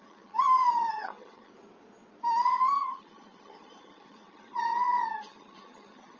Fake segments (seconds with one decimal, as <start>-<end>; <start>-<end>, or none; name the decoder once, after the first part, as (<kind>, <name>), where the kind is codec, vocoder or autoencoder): 0.0-1.5 (vocoder, HiFi-GAN); 2.4-6.2